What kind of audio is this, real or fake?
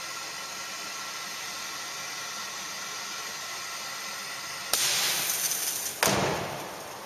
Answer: real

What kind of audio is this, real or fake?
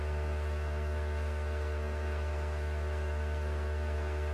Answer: fake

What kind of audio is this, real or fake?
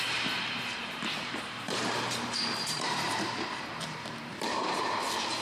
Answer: fake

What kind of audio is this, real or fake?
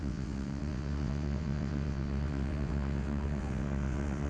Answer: fake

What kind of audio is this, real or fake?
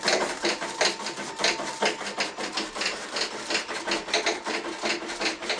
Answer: real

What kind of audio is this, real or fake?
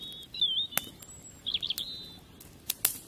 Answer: real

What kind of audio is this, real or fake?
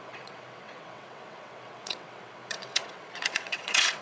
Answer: fake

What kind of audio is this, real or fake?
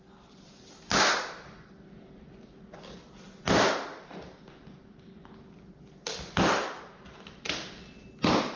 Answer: real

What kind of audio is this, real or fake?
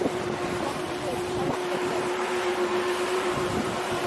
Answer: fake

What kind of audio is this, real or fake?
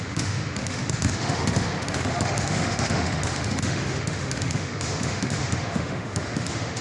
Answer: fake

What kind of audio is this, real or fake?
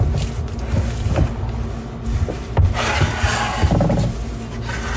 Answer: real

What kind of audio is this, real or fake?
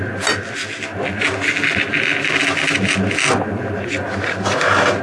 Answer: real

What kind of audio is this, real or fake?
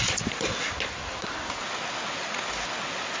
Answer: real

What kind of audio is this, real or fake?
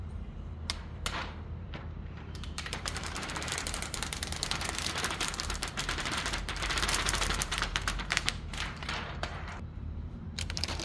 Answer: fake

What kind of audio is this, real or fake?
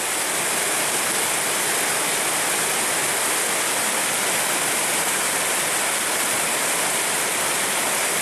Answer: real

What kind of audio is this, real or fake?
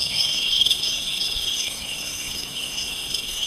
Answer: fake